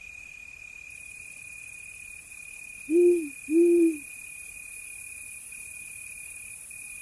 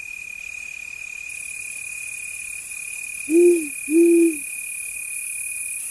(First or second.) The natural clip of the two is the second